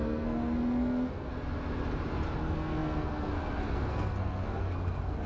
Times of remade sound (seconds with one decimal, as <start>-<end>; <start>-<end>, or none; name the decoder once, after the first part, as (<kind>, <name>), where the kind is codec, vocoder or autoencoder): 0.0-1.3 (codec, SNAC); 2.4-5.3